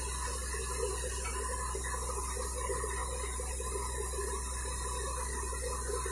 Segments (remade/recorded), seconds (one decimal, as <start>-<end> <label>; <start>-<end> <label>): 0.0-6.1 recorded